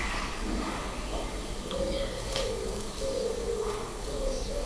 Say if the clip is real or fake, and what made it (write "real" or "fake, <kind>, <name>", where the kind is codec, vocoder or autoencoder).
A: fake, codec, DAC